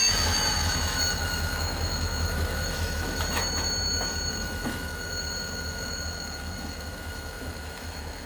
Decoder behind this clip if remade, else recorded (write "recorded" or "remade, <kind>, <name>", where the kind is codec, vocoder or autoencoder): remade, autoencoder, DAC-VAE